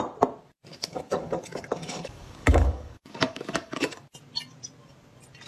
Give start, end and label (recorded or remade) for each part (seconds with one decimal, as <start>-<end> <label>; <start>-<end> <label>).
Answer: 0.0-0.7 recorded; 0.7-4.0 remade; 4.0-5.5 recorded